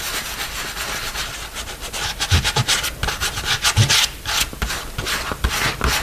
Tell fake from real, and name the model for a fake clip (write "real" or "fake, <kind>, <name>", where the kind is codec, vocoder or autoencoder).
real